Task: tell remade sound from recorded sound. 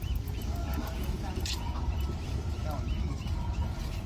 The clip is recorded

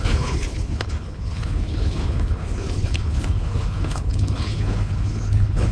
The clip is remade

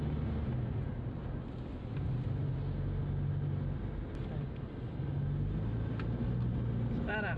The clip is recorded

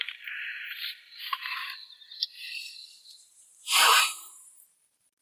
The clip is remade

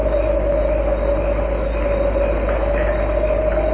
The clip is recorded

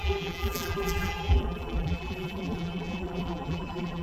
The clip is remade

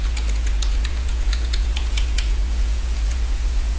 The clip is remade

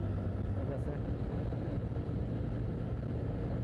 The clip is recorded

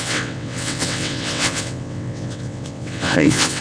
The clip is remade